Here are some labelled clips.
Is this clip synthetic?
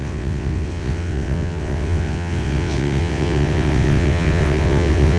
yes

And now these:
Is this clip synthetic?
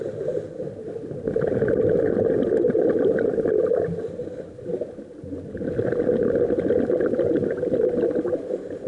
no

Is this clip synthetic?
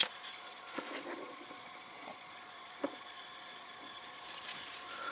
yes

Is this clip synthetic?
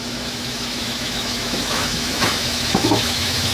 yes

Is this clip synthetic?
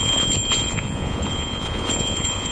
yes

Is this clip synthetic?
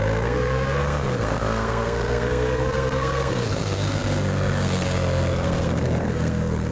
yes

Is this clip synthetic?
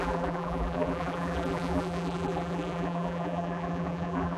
yes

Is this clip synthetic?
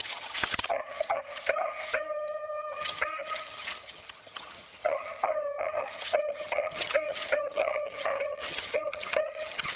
yes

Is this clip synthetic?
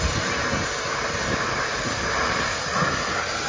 no